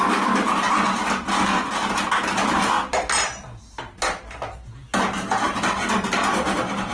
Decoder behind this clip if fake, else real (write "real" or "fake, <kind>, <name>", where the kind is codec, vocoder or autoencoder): real